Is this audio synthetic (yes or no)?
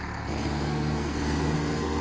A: yes